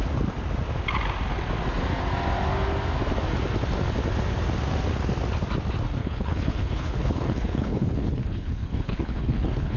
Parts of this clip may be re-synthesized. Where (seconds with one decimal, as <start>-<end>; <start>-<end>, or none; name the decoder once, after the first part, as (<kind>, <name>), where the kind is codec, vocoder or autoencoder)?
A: 6.0-9.8 (codec, HILCodec)